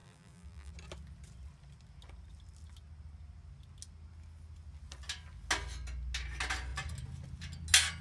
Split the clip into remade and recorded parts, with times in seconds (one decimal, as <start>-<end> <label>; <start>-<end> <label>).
0.0-0.7 remade; 0.7-8.0 recorded